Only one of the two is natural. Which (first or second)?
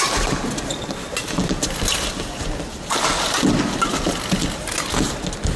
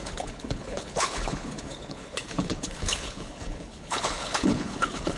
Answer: first